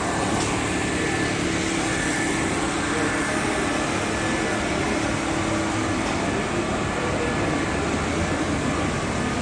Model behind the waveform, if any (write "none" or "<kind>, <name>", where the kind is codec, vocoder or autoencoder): none